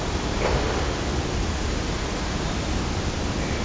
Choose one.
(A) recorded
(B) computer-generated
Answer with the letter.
A